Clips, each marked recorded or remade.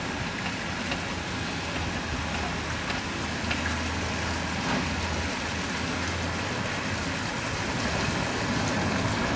recorded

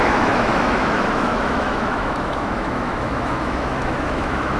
remade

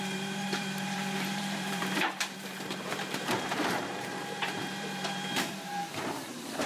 remade